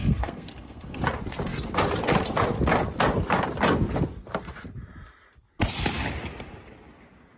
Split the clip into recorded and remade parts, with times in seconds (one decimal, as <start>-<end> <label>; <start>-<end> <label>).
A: 0.0-1.0 remade; 1.0-7.4 recorded